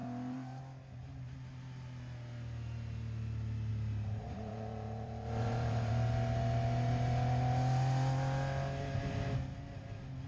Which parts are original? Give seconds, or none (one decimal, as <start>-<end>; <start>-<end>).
0.6-3.7; 5.9-10.3